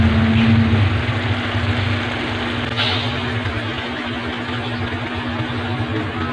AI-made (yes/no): no